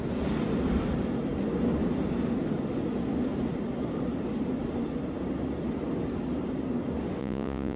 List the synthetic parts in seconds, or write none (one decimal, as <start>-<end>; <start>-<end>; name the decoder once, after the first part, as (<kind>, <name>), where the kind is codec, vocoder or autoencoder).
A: 7.2-7.8 (vocoder, Vocos)